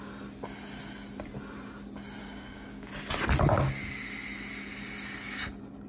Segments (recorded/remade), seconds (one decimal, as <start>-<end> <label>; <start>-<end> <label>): 0.0-2.2 recorded; 2.2-2.9 remade; 2.9-5.9 recorded